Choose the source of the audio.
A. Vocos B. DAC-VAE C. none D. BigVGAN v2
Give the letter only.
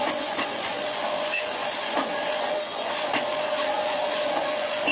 A